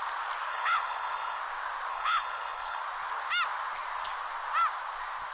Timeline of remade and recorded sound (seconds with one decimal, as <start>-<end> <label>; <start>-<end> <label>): 0.0-0.5 recorded; 0.5-1.4 remade; 1.4-1.9 recorded; 1.9-2.8 remade; 2.8-5.3 recorded